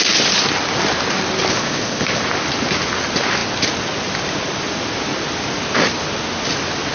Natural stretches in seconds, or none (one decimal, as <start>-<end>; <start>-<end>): 0.0-1.5; 2.2-6.9